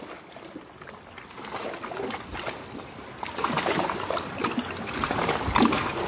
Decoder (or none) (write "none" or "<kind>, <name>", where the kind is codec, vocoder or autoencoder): none